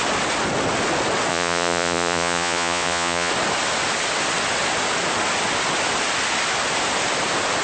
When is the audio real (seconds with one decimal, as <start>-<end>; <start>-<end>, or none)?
0.0-1.3; 3.3-7.6